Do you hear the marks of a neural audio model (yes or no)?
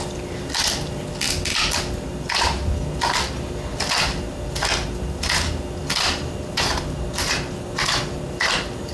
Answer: no